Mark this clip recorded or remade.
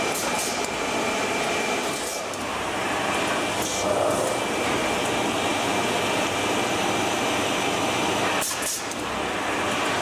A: recorded